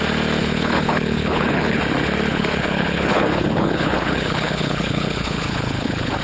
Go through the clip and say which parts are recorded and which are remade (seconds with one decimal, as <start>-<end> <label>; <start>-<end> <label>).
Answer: 0.0-0.4 recorded; 0.4-1.8 remade; 1.8-2.3 recorded; 2.3-6.2 remade

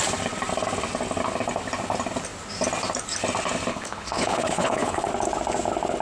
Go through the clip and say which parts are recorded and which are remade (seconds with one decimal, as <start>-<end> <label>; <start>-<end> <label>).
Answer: 0.0-3.7 recorded; 3.7-5.1 remade; 5.1-6.0 recorded

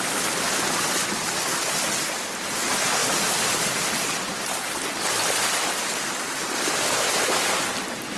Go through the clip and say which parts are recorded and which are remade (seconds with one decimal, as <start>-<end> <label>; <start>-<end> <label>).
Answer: 0.0-8.2 recorded

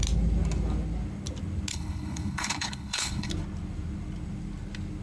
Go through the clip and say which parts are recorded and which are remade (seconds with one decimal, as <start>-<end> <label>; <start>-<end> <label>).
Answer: 0.0-1.7 recorded; 1.7-3.3 remade; 3.3-5.0 recorded